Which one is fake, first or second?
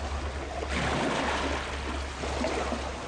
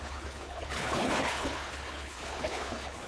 second